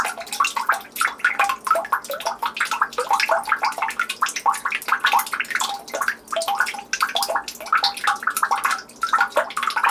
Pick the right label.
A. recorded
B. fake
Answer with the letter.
A